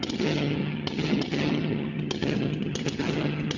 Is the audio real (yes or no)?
no